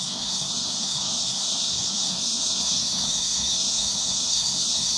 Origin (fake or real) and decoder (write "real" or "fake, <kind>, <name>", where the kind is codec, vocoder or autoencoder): fake, codec, SNAC